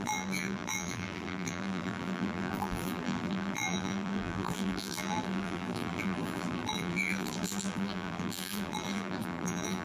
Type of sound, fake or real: fake